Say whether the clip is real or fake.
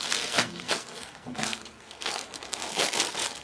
fake